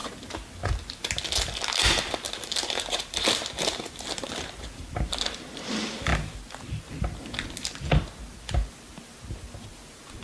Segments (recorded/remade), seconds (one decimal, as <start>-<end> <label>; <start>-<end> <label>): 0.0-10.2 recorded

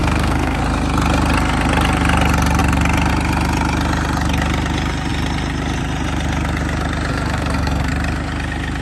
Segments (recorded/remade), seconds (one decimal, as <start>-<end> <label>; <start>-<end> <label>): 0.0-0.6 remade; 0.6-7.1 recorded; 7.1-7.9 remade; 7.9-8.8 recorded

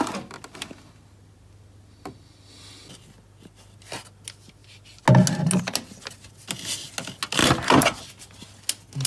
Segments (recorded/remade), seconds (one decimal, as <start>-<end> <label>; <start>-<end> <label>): 0.0-9.1 recorded

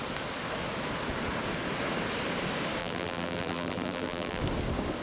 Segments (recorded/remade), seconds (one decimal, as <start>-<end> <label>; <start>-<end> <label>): 0.0-2.8 recorded; 2.8-4.4 remade; 4.4-5.0 recorded